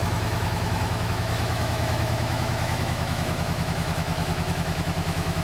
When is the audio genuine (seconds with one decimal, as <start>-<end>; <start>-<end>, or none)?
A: none